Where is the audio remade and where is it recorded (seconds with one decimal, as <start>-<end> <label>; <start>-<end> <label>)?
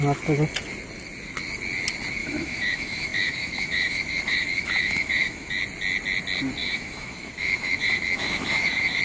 0.0-2.2 recorded; 2.2-5.6 remade; 5.6-6.6 recorded; 6.6-9.0 remade